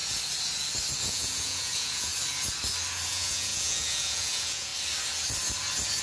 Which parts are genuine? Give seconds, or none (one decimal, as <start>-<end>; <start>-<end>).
0.0-1.0; 2.1-3.1; 4.7-6.0